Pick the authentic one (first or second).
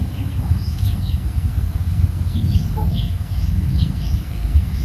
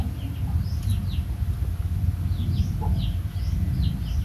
second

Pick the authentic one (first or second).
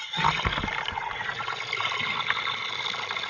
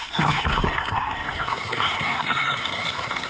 first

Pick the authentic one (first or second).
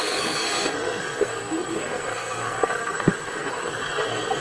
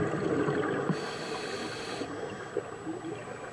second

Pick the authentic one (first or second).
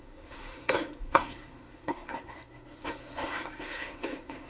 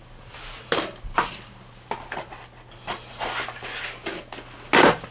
second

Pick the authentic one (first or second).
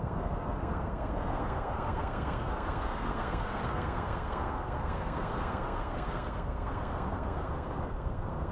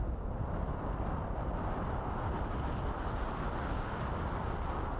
second